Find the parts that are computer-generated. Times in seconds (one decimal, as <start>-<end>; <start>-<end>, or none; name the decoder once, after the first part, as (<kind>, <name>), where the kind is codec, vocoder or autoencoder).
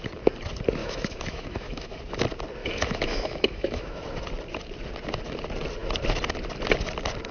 0.8-2.0 (autoencoder, DAC-VAE); 2.6-4.0